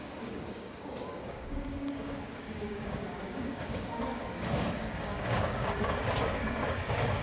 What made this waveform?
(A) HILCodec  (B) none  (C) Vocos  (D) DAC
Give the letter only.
D